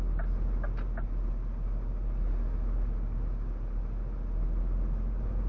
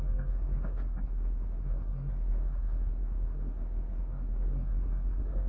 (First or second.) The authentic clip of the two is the first